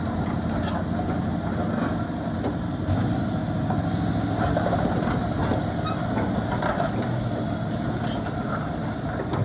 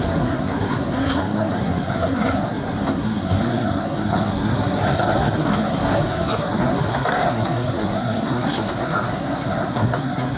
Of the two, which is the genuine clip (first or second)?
first